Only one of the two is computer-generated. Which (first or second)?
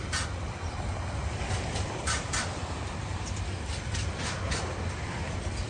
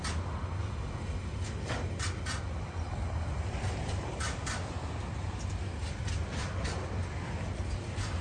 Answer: first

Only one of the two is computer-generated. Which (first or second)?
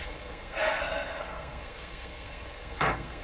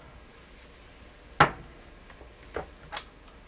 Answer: first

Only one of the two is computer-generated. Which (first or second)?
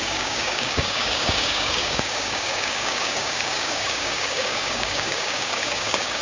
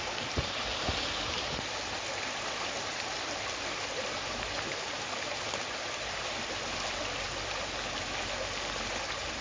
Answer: first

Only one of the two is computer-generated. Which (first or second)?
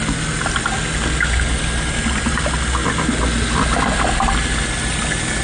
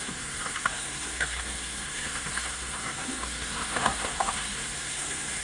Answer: second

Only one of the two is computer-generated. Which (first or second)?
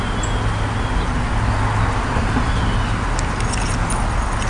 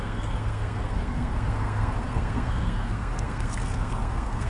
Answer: second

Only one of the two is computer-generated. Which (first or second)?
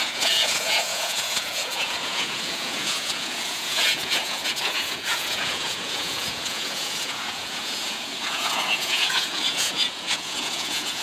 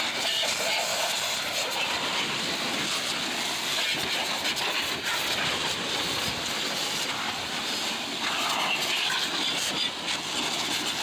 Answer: first